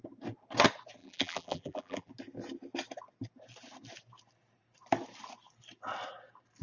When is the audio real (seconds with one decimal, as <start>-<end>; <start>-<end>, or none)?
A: 0.0-1.0; 2.1-6.6